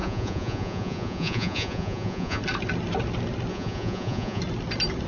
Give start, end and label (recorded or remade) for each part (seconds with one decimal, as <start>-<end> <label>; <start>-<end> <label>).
0.0-2.4 remade; 2.4-3.5 recorded; 3.5-4.4 remade; 4.4-5.1 recorded